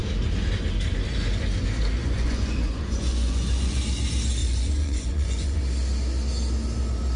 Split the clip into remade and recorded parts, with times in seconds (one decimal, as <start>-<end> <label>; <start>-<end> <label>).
0.0-2.0 recorded; 2.0-3.8 remade; 3.8-4.4 recorded; 4.4-5.6 remade; 5.6-7.2 recorded